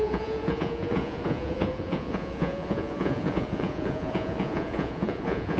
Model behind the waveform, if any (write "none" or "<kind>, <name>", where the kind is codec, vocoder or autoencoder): vocoder, Vocos